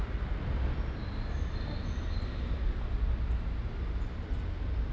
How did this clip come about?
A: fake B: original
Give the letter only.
B